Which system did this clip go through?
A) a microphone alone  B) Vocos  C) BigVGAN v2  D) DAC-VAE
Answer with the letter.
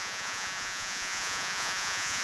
B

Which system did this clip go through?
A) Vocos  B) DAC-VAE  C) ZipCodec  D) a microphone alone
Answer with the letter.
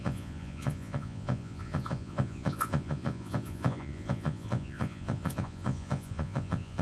A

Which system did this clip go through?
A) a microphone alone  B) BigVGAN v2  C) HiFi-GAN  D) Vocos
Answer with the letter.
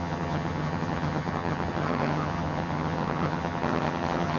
C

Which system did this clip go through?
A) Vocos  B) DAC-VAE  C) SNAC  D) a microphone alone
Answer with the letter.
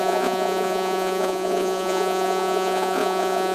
A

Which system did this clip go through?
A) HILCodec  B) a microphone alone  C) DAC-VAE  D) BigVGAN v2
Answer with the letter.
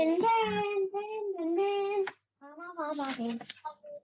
B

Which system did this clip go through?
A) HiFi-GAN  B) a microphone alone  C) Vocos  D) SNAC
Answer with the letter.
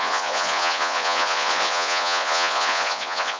C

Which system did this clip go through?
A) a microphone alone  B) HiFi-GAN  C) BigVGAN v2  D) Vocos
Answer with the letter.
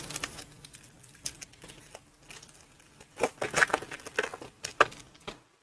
A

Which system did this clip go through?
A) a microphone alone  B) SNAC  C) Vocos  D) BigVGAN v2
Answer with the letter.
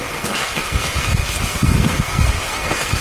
B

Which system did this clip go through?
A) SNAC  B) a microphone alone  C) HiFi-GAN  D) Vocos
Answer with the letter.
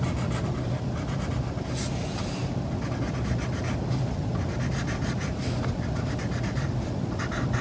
B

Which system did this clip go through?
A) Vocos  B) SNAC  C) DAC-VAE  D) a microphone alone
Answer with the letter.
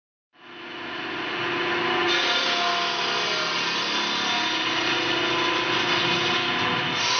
D